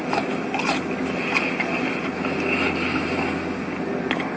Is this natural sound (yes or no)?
yes